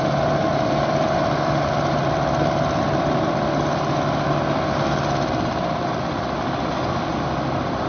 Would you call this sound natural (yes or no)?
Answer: yes